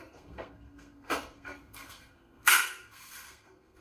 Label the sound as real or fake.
fake